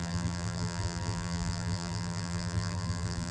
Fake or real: fake